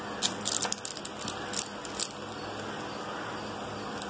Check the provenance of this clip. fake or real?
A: real